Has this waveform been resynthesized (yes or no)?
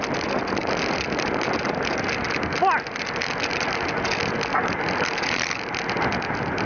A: no